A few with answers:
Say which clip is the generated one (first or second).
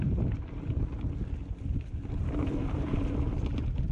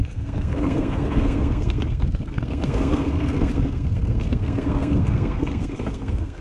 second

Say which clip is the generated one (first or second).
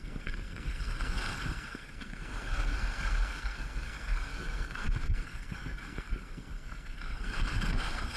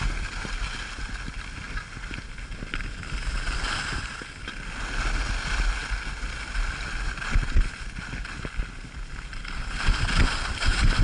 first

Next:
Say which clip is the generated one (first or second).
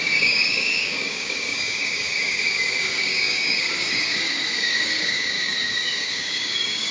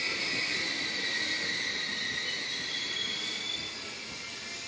first